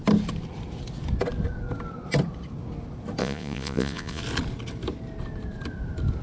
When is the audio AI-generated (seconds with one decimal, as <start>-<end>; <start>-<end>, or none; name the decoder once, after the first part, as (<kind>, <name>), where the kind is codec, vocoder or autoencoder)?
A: 3.2-4.2 (vocoder, Vocos)